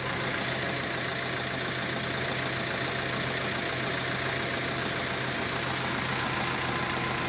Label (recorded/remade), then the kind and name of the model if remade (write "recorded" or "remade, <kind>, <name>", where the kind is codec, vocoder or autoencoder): recorded